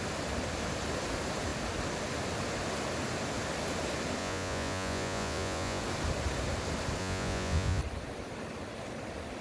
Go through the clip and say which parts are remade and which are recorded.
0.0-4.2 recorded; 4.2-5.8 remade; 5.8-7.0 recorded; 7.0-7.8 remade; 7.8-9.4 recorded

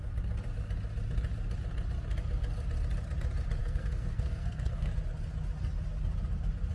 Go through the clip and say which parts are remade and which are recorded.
0.0-3.6 recorded; 3.6-4.9 remade; 4.9-6.7 recorded